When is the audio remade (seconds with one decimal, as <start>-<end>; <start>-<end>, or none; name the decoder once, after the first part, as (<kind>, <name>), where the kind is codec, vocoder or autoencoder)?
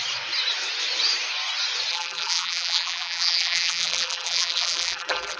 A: 1.9-5.4 (vocoder, BigVGAN v2)